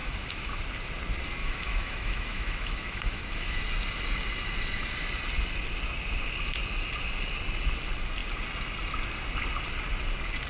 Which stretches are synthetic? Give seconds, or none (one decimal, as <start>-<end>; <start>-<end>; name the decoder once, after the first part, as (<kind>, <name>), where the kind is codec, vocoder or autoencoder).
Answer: 0.0-0.6 (autoencoder, DAC-VAE); 1.4-3.6